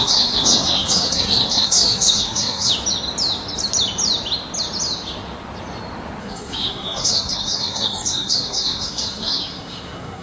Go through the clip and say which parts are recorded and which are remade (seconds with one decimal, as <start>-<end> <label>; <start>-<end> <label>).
0.0-2.7 remade; 2.7-6.2 recorded; 6.2-10.2 remade